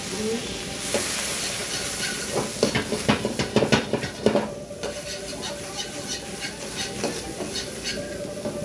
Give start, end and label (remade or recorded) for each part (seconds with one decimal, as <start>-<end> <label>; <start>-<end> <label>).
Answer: 0.0-8.6 recorded